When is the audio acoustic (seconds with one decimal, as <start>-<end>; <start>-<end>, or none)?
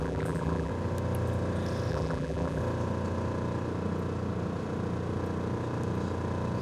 0.7-1.9; 2.6-6.6